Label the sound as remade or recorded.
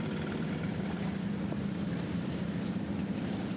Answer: remade